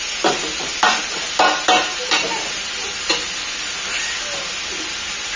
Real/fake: real